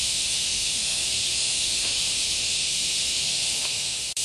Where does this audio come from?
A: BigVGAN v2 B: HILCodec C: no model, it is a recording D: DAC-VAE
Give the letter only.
D